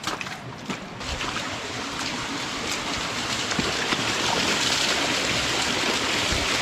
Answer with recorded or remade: recorded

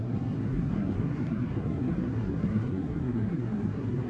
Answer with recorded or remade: remade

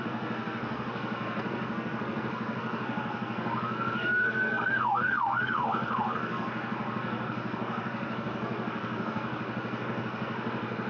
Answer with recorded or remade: remade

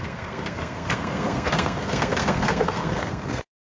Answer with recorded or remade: remade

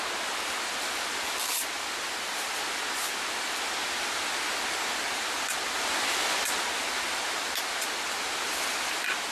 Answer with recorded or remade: recorded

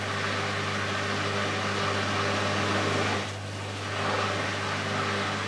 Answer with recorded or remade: recorded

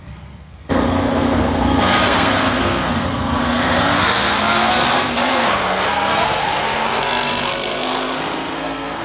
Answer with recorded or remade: remade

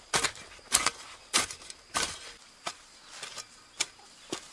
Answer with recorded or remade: recorded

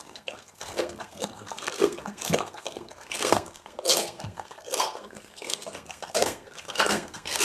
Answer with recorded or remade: remade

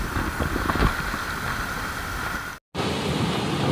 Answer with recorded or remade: recorded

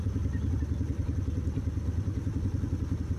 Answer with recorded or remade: recorded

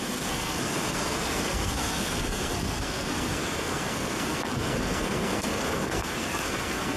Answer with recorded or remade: remade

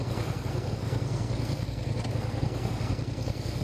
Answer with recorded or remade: remade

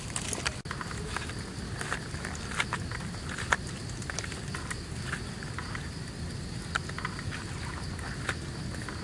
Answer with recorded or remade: recorded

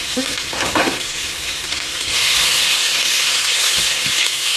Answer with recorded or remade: remade